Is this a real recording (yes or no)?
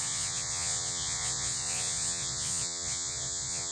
no